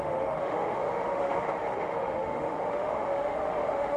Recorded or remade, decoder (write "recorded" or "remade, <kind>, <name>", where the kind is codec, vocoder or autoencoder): remade, autoencoder, DAC-VAE